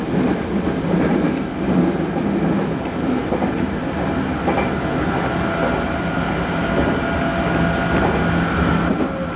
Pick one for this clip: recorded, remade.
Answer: recorded